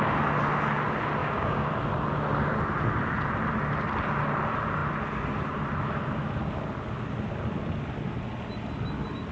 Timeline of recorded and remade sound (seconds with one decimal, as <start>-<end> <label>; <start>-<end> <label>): 0.0-1.2 recorded; 1.2-1.7 remade; 1.7-9.3 recorded